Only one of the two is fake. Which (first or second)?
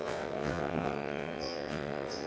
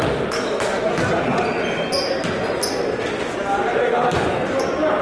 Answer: first